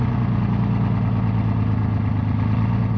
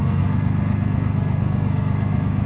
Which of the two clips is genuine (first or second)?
first